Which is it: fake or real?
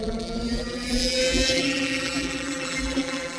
fake